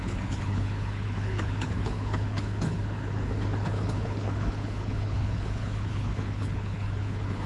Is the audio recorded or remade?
remade